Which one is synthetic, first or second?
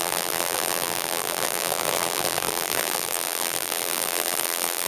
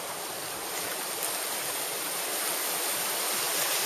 first